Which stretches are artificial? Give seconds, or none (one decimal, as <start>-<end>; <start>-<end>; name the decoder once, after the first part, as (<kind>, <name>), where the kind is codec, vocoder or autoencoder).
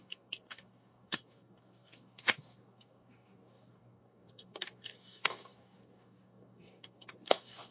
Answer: 0.0-7.7 (codec, DAC)